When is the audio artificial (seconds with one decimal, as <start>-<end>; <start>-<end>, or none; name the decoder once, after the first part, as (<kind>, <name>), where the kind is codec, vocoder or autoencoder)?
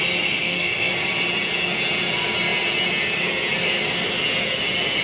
0.4-0.9 (codec, SNAC)